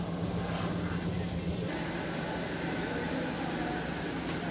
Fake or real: real